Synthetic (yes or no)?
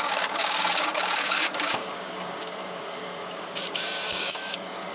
yes